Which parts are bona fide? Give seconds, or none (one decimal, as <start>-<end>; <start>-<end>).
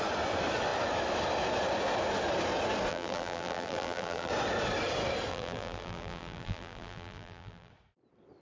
0.0-2.9; 4.3-5.3; 7.7-8.4